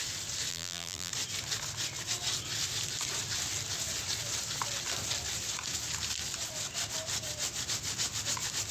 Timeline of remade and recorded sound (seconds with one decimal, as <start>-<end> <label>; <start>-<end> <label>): 0.0-0.5 recorded; 0.5-1.1 remade; 1.1-8.7 recorded